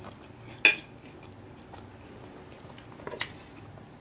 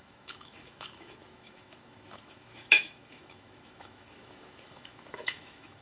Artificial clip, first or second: second